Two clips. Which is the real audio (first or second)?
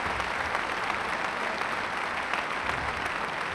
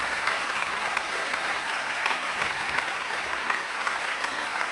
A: first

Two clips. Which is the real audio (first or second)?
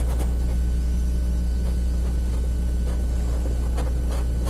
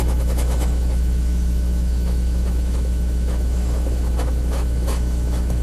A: first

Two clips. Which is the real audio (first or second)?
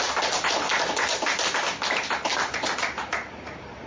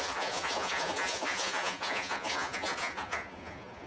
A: first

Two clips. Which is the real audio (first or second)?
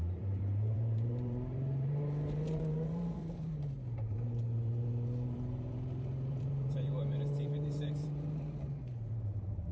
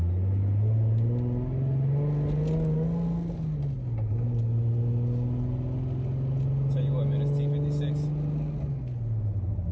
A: second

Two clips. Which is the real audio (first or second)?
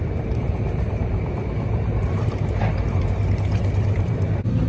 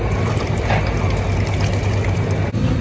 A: second